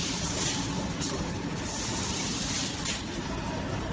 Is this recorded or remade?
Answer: remade